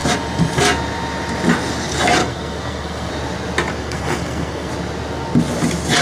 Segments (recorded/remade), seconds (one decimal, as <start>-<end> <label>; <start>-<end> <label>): 0.0-2.2 recorded; 2.2-3.1 remade; 3.1-3.7 recorded; 3.7-4.7 remade; 4.7-6.0 recorded